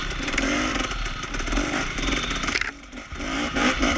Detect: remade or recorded remade